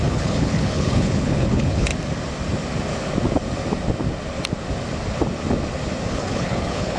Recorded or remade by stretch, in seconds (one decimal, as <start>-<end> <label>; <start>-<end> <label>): 0.0-1.9 remade; 1.9-6.1 recorded; 6.1-7.0 remade